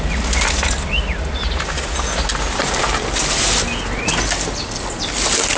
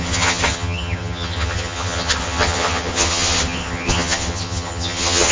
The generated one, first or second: second